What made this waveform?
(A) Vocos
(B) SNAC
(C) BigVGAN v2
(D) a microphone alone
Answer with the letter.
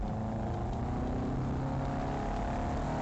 D